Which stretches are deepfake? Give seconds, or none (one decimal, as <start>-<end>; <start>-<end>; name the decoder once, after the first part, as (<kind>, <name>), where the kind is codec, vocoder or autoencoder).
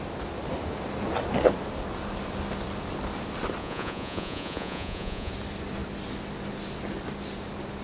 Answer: 3.6-5.3 (vocoder, Vocos)